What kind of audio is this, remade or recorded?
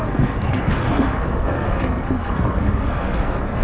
remade